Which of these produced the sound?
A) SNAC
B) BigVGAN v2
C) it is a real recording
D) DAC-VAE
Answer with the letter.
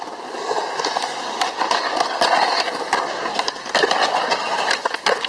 C